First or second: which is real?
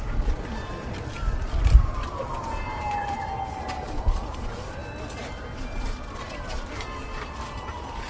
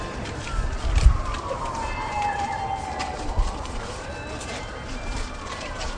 first